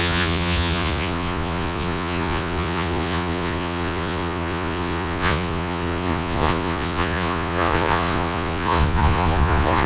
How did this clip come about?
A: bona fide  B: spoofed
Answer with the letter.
B